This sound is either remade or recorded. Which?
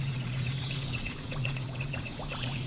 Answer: remade